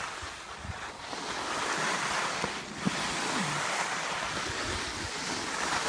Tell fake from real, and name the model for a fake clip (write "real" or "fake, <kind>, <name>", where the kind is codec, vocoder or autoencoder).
real